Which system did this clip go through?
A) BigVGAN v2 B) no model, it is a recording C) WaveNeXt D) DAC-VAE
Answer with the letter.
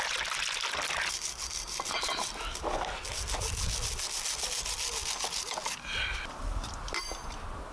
B